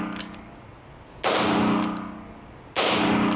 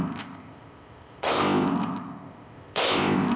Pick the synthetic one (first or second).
second